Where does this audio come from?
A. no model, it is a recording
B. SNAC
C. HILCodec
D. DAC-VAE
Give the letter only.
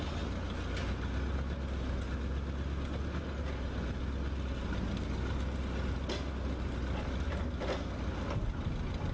A